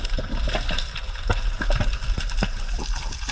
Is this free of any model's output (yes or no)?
no